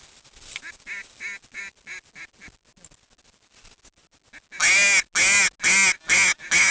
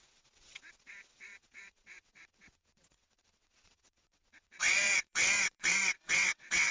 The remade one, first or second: second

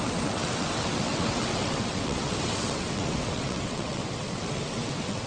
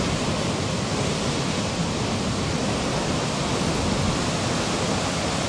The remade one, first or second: first